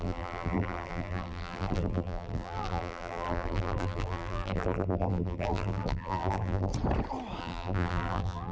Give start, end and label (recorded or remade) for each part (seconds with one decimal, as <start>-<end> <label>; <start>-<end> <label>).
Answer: 0.0-6.7 remade; 6.7-7.4 recorded; 7.4-8.5 remade